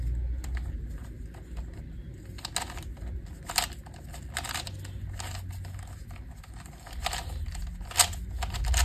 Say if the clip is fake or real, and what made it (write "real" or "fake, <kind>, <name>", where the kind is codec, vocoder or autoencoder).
real